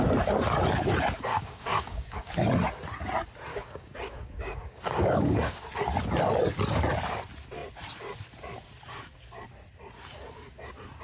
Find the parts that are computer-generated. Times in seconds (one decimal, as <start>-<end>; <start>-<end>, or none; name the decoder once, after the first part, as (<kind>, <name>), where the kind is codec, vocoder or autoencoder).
1.3-2.5 (codec, DAC); 3.5-5.6